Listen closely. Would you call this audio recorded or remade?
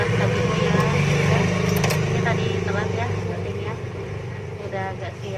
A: recorded